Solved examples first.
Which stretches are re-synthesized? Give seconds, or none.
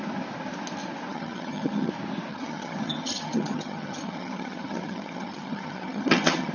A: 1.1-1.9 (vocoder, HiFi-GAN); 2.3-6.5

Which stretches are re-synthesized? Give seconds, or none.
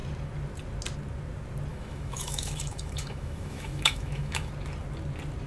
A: 1.7-4.5 (autoencoder, DAC-VAE)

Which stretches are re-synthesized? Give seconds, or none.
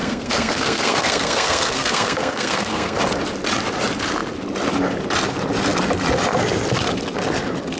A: 0.0-3.0 (codec, SNAC)